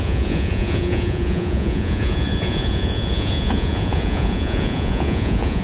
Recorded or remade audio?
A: remade